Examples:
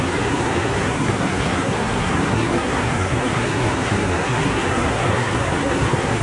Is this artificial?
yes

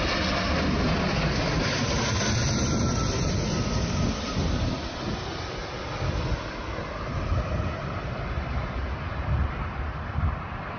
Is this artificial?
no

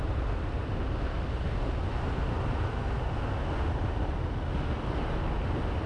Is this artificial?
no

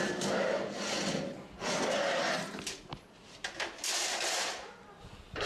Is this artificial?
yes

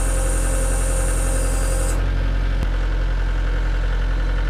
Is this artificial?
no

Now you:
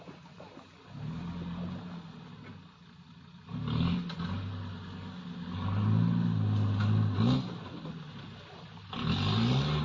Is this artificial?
no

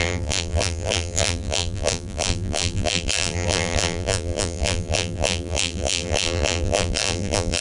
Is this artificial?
yes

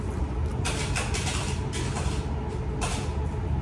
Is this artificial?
no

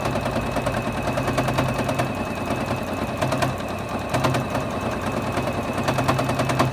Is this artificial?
no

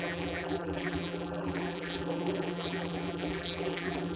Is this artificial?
yes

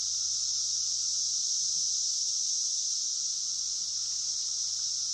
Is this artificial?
no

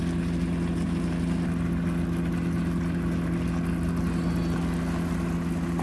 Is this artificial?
no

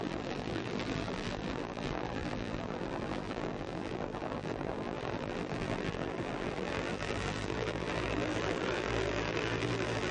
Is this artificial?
yes